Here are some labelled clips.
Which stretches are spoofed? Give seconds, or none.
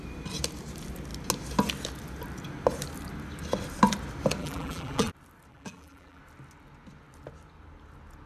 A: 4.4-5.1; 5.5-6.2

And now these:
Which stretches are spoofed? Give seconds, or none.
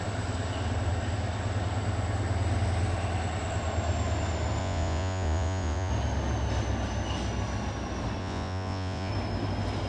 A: 4.6-5.9; 8.2-9.1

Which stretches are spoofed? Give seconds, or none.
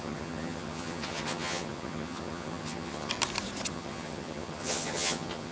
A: 0.0-3.1; 3.7-5.5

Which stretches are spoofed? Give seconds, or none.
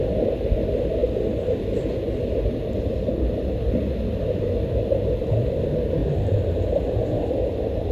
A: none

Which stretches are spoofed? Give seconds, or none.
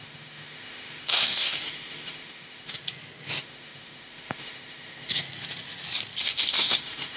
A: 0.0-2.8; 3.4-5.2; 6.2-7.2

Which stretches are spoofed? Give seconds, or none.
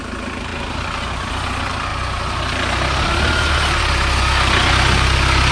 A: 0.5-1.3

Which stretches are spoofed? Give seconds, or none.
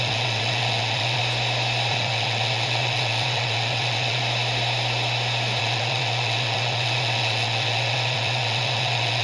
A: 0.0-1.2; 1.9-4.2; 5.6-9.2